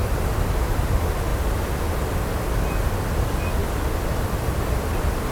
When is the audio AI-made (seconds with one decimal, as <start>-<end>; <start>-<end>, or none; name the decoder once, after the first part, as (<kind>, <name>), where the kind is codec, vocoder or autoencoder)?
none